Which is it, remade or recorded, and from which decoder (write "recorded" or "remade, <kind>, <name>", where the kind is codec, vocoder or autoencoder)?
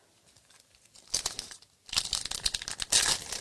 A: recorded